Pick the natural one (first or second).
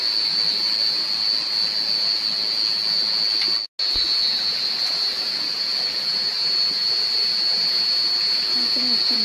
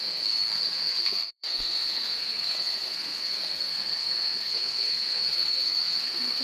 first